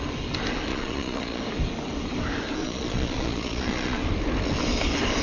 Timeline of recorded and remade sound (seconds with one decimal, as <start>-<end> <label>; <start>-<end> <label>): 0.0-0.7 recorded; 0.7-1.4 remade; 1.4-2.6 recorded; 2.6-4.0 remade; 4.0-5.2 recorded